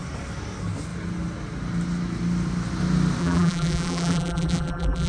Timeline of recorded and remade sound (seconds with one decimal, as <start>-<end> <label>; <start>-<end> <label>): 0.0-3.2 recorded; 3.2-5.1 remade